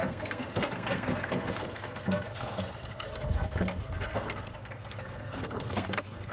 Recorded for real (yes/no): no